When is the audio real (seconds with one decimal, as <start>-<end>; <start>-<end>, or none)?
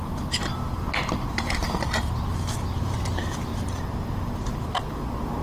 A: 0.0-5.4